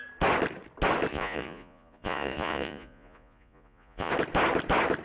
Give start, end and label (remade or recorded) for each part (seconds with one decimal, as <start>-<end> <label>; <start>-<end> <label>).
0.0-1.1 recorded; 1.1-4.1 remade; 4.1-5.0 recorded